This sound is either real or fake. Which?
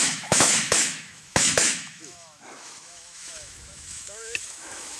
fake